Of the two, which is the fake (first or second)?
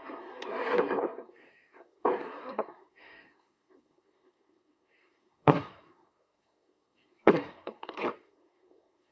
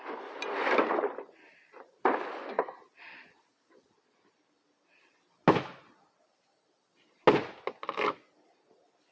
first